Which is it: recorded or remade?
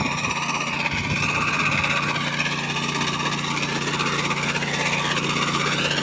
recorded